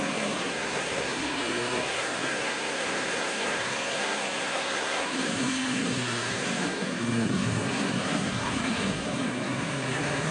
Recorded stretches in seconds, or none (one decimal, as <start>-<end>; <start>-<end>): none